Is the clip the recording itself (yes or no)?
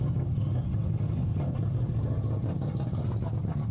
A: yes